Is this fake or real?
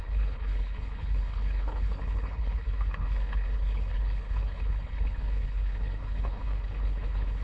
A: fake